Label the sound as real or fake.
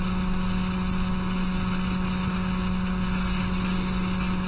real